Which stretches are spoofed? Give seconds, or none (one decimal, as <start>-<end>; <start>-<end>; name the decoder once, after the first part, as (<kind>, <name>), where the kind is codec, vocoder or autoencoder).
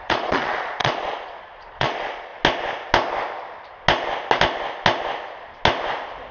0.0-2.3 (vocoder, Vocos)